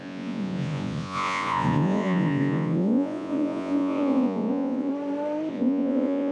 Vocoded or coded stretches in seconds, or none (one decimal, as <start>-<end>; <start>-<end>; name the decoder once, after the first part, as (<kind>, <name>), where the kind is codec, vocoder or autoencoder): 0.0-4.9 (vocoder, Vocos); 5.5-6.3